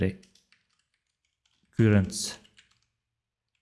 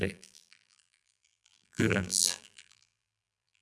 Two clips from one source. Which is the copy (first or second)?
second